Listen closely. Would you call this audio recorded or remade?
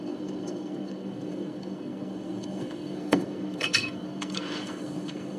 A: remade